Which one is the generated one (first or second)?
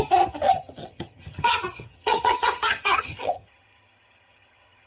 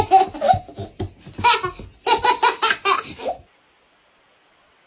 first